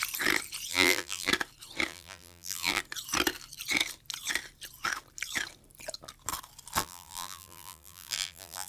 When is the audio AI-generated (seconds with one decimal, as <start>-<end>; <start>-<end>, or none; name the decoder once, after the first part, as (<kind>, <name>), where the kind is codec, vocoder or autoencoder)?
0.7-1.3 (vocoder, BigVGAN v2); 1.9-2.8; 6.8-8.7